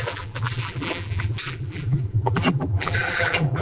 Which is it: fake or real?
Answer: fake